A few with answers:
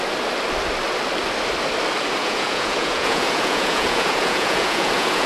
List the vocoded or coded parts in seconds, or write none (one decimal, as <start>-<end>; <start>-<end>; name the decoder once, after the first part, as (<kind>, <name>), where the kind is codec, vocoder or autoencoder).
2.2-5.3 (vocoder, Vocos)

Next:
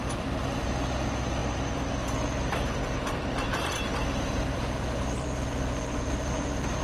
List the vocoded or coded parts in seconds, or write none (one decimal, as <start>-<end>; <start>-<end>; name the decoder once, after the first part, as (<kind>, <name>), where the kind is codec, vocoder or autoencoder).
0.0-6.8 (vocoder, BigVGAN v2)

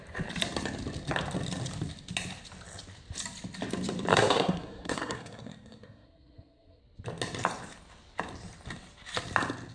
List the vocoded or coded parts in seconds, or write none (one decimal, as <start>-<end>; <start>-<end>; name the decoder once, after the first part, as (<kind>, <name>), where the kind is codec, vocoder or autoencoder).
4.1-6.8 (codec, SNAC)

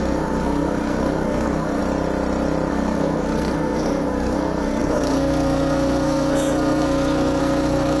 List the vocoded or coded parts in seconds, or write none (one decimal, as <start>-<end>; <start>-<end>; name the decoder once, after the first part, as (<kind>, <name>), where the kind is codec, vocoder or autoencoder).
0.0-1.8 (codec, SNAC); 2.7-8.0

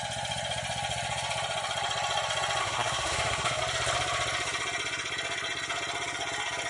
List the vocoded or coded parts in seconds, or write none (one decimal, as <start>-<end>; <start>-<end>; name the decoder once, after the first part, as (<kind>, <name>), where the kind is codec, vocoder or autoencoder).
2.6-3.6 (codec, SNAC)

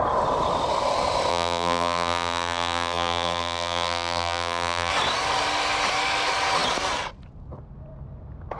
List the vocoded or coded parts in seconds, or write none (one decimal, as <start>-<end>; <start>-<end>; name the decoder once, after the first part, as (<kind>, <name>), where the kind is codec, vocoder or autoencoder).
1.3-4.9 (vocoder, BigVGAN v2)

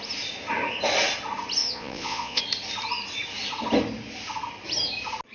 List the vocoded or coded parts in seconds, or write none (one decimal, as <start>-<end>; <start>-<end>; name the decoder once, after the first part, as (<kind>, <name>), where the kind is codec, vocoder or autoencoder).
1.6-2.4 (vocoder, Vocos)